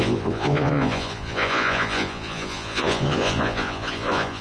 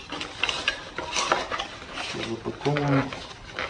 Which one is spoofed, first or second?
first